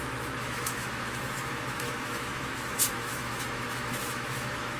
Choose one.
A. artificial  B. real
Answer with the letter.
A